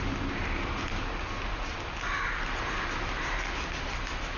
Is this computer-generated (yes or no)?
no